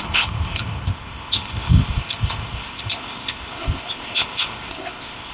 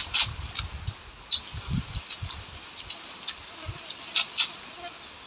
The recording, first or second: second